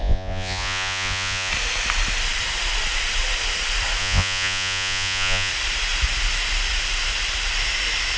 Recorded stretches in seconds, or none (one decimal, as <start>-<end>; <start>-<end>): 1.5-4.0; 5.5-8.2